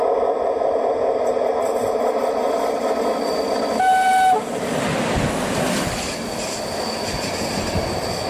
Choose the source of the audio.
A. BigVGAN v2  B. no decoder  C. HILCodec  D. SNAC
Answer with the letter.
B